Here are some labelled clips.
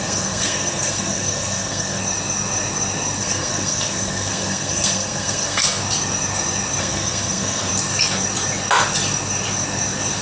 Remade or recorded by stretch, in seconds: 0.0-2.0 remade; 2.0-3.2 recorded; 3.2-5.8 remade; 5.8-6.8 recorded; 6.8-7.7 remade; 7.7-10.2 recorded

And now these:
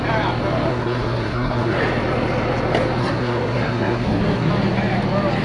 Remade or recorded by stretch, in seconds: 0.0-0.7 recorded; 0.7-1.8 remade; 1.8-3.0 recorded; 3.0-4.5 remade; 4.5-5.4 recorded

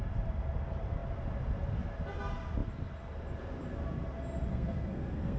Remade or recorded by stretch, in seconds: 0.0-4.5 recorded; 4.5-5.4 remade

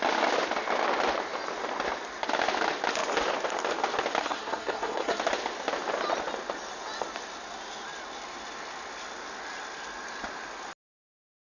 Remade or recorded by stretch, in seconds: 0.0-4.2 recorded; 4.2-5.2 remade; 5.2-11.5 recorded

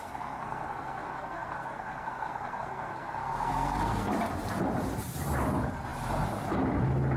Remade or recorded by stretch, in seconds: 0.0-4.1 remade; 4.1-7.2 recorded

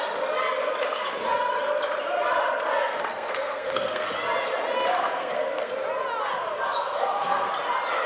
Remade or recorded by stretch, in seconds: 0.0-2.8 recorded; 2.8-4.1 remade; 4.1-5.0 recorded; 5.0-5.7 remade; 5.7-6.8 recorded; 6.8-7.5 remade; 7.5-8.1 recorded